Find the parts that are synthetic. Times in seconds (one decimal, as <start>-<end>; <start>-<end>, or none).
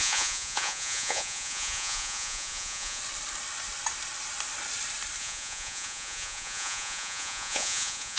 0.0-3.0; 5.2-8.2